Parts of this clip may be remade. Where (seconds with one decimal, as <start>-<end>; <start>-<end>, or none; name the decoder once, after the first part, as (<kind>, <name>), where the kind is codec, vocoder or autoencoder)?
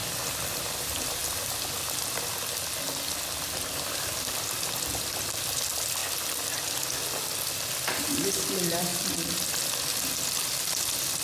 0.5-1.2 (vocoder, BigVGAN v2); 3.7-6.0; 8.0-11.2